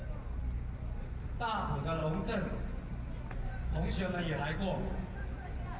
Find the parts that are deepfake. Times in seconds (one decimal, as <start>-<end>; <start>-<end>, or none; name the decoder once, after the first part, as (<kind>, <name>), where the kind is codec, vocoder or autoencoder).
none